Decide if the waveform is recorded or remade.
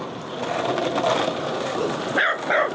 recorded